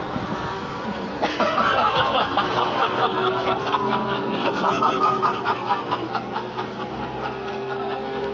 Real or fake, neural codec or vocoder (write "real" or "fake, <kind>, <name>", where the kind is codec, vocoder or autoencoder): fake, codec, SNAC